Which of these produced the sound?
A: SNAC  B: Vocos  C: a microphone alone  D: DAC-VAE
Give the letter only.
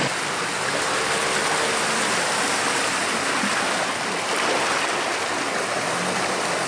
C